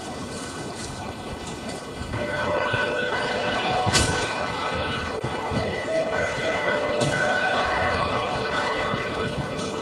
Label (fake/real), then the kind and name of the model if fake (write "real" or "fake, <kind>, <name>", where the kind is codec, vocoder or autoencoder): fake, codec, HILCodec